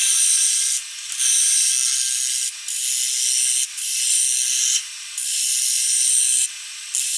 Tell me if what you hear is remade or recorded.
recorded